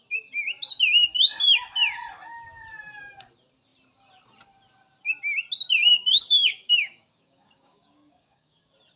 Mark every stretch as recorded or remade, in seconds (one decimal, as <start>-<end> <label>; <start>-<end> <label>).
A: 0.0-5.9 recorded; 5.9-8.6 remade; 8.6-9.0 recorded